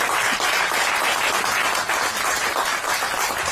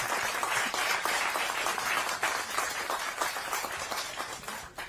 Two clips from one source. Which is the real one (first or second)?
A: first